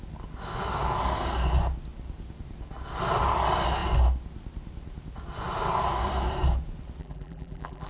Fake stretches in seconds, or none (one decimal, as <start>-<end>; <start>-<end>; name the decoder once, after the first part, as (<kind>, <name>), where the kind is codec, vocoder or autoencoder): 7.0-7.9 (vocoder, BigVGAN v2)

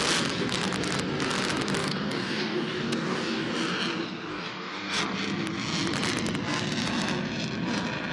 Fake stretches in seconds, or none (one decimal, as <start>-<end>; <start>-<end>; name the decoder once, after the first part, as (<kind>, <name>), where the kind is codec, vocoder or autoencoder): 1.8-3.5 (codec, DAC); 4.3-5.0

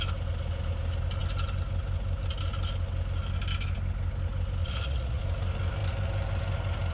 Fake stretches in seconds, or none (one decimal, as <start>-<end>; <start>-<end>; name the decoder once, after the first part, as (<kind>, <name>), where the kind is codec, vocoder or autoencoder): 4.6-5.2 (vocoder, Vocos)

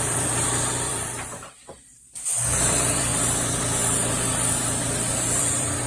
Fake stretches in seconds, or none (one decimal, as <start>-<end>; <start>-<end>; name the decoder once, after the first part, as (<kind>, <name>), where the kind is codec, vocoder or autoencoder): 0.0-3.1 (vocoder, BigVGAN v2); 5.4-5.9